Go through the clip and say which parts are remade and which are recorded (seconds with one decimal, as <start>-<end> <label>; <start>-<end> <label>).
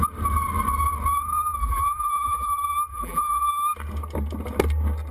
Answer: 0.0-1.6 recorded; 1.6-2.5 remade; 2.5-2.9 recorded; 2.9-3.5 remade; 3.5-5.1 recorded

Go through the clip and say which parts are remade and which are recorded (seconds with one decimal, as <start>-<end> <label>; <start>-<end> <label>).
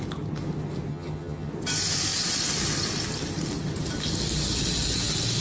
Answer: 0.0-0.9 recorded; 0.9-1.5 remade; 1.5-5.4 recorded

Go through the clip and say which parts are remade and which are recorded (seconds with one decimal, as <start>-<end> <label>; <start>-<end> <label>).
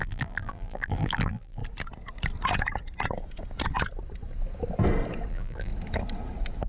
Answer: 0.0-1.6 remade; 1.6-5.3 recorded; 5.3-5.7 remade; 5.7-6.7 recorded